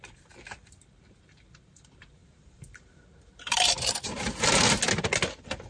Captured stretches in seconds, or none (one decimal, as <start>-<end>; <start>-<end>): 0.0-2.2; 4.2-5.7